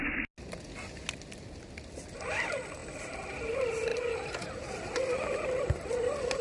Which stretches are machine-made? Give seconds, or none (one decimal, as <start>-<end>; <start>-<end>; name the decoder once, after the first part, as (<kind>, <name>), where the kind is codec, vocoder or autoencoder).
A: none